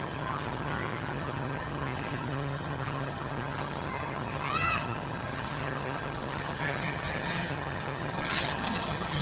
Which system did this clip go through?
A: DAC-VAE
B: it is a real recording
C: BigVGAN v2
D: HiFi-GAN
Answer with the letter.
D